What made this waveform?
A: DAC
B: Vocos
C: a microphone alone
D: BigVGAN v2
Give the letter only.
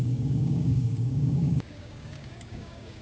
A